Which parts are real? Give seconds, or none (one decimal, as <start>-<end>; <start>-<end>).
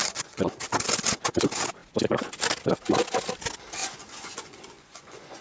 0.6-3.8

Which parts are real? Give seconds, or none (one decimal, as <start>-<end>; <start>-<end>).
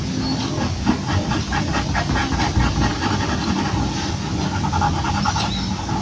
0.0-6.0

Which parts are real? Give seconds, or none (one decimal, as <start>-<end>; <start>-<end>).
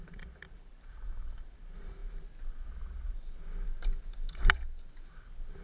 2.0-5.6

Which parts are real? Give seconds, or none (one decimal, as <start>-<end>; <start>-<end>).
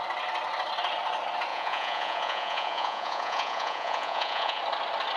0.0-1.5; 4.6-5.2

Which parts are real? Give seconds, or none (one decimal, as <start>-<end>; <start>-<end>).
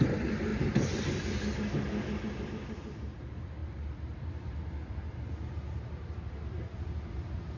0.0-3.6; 6.3-7.6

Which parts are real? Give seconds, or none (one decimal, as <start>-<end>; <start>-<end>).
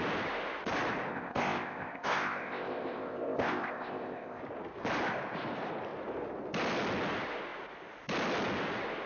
0.0-1.1; 4.4-9.1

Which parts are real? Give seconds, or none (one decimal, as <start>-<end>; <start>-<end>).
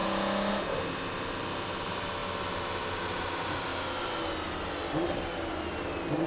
0.0-6.3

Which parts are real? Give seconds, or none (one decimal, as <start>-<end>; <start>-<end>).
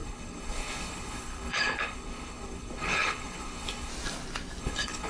3.9-4.6